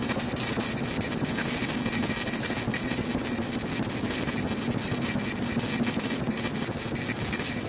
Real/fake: real